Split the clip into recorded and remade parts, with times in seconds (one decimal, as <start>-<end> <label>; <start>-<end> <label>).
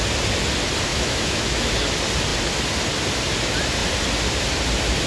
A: 0.0-0.9 recorded; 0.9-1.7 remade; 1.7-5.1 recorded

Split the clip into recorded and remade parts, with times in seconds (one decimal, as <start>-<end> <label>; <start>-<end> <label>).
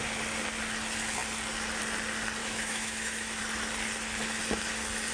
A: 0.0-2.4 recorded; 2.4-3.4 remade; 3.4-5.1 recorded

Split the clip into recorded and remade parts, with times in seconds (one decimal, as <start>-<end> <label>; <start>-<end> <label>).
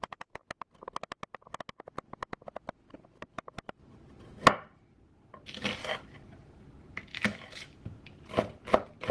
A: 0.0-7.1 recorded; 7.1-8.0 remade; 8.0-9.1 recorded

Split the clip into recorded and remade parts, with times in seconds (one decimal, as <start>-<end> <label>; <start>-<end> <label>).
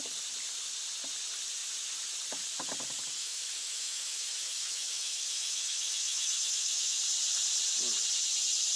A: 0.0-3.2 recorded; 3.2-7.0 remade; 7.0-8.8 recorded